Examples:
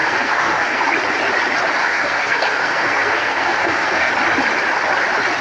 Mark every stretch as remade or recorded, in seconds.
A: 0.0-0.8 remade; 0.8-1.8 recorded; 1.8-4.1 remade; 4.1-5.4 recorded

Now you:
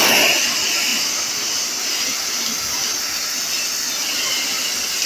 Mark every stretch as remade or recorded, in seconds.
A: 0.0-5.1 recorded

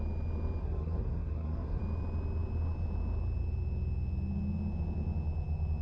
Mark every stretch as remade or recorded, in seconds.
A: 0.0-0.6 recorded; 0.6-1.8 remade; 1.8-5.8 recorded

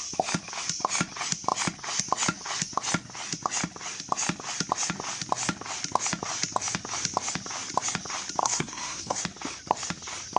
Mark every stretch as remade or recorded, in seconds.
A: 0.0-8.4 recorded; 8.4-9.2 remade; 9.2-10.4 recorded